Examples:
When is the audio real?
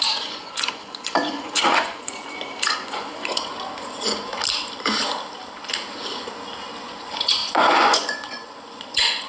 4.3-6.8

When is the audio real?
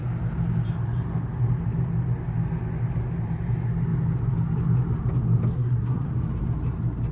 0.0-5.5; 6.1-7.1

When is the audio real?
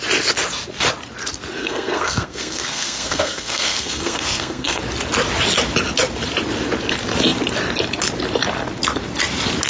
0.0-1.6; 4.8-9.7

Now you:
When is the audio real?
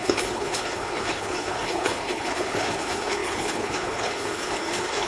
none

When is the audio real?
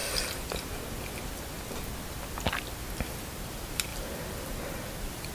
0.0-5.3